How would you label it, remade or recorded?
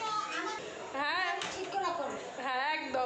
recorded